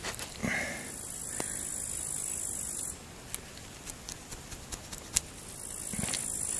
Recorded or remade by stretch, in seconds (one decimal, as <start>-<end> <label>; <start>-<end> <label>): 0.0-6.6 recorded